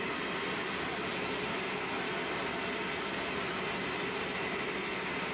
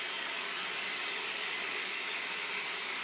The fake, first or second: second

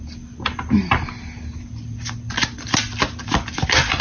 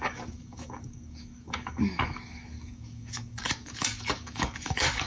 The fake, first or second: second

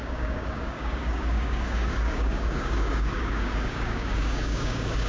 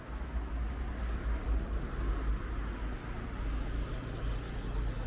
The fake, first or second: first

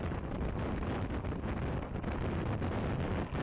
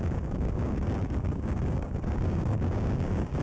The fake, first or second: second